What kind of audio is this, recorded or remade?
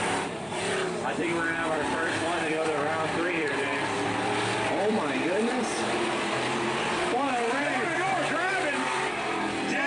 remade